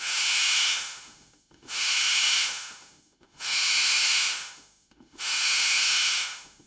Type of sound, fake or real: fake